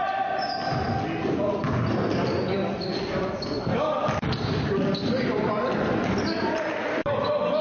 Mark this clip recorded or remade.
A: recorded